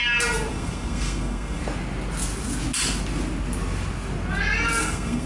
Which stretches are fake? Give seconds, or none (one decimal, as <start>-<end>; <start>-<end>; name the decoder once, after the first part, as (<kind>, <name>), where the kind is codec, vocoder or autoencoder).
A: 0.5-1.6 (codec, SNAC); 4.8-5.3